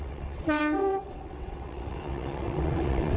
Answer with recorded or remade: remade